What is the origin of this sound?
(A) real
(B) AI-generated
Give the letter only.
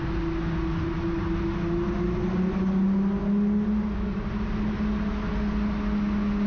A